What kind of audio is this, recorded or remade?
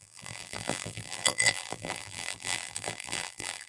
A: remade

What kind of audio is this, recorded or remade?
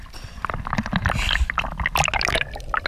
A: recorded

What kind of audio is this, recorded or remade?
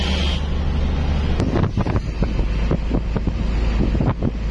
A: recorded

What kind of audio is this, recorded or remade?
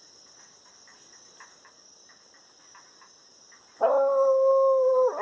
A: recorded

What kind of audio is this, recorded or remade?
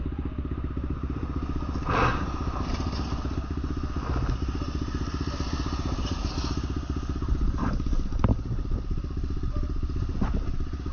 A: recorded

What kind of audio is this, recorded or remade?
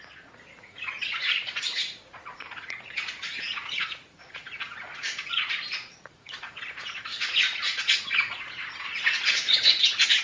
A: remade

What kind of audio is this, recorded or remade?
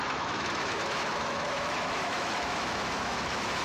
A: remade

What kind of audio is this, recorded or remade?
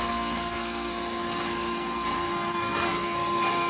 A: remade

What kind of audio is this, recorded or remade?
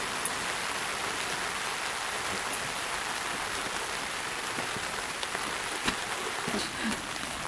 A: recorded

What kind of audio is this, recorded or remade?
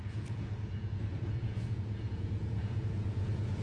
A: remade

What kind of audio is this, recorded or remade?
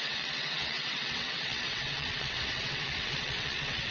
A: remade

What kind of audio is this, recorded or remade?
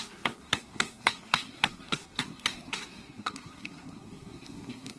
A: remade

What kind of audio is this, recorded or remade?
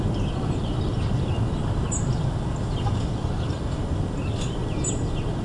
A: recorded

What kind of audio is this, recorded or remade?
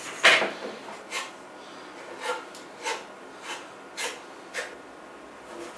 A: recorded